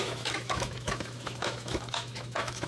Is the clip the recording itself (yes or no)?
no